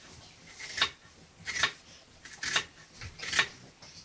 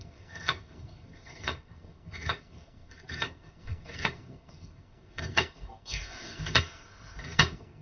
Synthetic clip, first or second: second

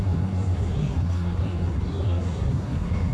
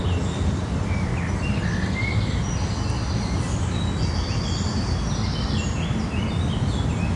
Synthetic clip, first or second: first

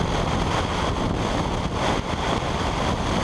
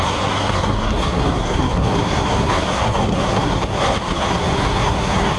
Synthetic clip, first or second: second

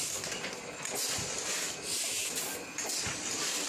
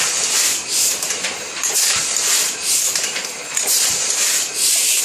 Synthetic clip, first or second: second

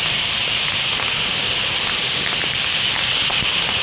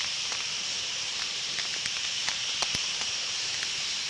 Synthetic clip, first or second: second